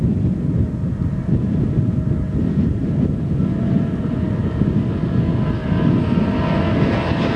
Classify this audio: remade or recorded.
recorded